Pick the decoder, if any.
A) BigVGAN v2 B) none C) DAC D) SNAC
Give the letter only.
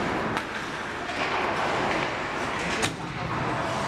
B